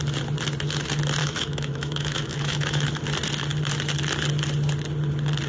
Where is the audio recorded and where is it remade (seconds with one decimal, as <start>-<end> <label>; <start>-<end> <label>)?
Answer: 0.0-1.2 recorded; 1.2-2.9 remade; 2.9-5.5 recorded